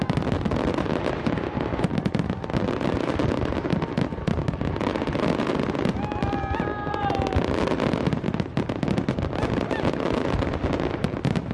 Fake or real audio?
real